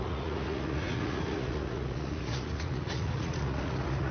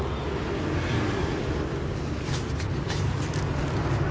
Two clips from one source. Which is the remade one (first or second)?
first